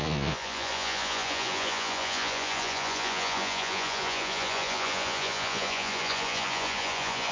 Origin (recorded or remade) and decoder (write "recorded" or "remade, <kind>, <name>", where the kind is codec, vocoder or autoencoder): remade, vocoder, Vocos